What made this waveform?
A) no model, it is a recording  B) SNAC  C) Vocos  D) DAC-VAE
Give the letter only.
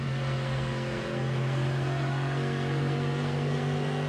B